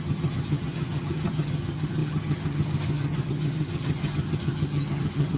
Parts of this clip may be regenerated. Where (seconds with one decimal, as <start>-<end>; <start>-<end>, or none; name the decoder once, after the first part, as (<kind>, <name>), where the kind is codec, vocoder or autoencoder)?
0.0-5.4 (vocoder, HiFi-GAN)